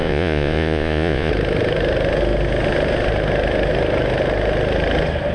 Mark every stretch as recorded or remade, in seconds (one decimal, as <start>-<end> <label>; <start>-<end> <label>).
0.0-1.3 remade; 1.3-5.3 recorded